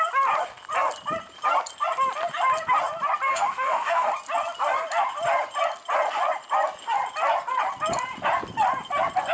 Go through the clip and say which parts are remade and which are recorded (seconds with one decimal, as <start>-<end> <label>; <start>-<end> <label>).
0.0-3.3 recorded; 3.3-4.1 remade; 4.1-9.3 recorded